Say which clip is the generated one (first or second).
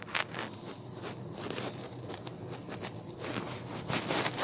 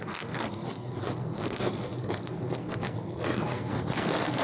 second